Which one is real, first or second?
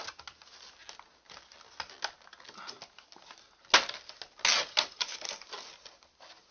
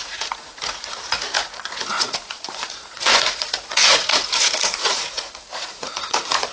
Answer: first